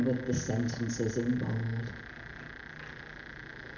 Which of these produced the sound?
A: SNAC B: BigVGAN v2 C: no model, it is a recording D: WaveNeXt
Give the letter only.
C